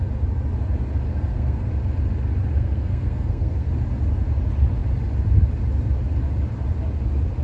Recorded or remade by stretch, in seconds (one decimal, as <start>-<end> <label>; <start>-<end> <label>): 0.0-1.1 recorded; 1.1-1.7 remade; 1.7-2.5 recorded; 2.5-3.7 remade; 3.7-7.4 recorded